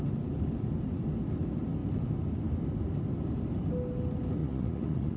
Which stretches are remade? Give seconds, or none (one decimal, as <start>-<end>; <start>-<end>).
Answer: 4.4-5.2